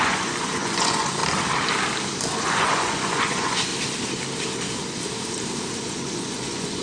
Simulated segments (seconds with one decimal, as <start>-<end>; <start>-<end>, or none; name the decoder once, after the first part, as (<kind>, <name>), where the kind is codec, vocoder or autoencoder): 0.0-1.2 (vocoder, Vocos); 2.3-3.7; 5.8-6.8